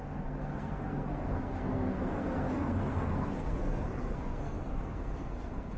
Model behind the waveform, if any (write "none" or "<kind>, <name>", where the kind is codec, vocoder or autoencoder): codec, SNAC